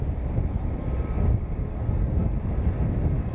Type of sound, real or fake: real